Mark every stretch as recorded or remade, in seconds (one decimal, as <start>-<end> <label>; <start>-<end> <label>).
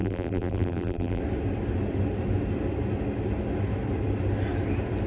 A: 0.0-1.2 remade; 1.2-5.1 recorded